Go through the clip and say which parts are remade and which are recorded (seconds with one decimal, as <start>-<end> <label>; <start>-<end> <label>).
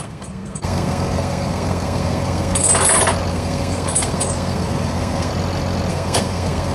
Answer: 0.0-2.7 remade; 2.7-3.3 recorded; 3.3-5.3 remade; 5.3-5.9 recorded; 5.9-6.7 remade